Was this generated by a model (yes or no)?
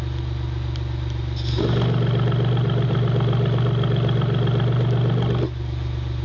no